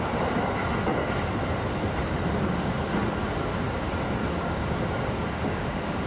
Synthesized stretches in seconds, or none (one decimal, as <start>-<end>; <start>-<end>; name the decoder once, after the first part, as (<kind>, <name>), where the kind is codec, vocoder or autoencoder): 4.2-6.1 (codec, DAC)